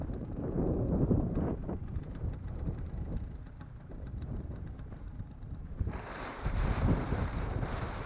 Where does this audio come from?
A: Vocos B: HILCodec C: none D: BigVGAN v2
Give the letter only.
D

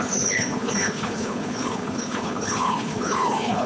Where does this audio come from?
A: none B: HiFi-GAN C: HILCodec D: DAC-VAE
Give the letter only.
C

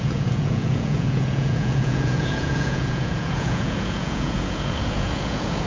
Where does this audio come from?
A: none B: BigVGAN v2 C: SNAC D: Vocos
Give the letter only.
D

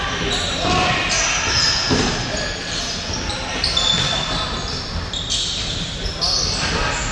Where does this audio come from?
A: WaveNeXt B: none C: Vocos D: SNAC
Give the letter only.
B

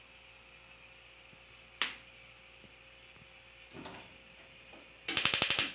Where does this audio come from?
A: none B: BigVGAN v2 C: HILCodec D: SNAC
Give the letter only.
A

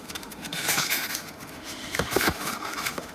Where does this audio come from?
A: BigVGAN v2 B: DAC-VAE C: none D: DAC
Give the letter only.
B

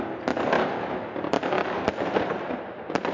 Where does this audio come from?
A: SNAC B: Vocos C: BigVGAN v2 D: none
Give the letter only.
D